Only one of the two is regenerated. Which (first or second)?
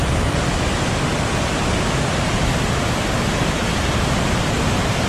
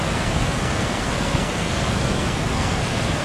second